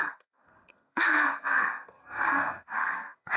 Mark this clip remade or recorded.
remade